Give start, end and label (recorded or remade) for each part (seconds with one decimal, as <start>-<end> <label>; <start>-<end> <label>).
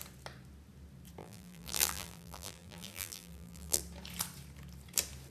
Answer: 0.0-1.2 recorded; 1.2-3.8 remade; 3.8-5.3 recorded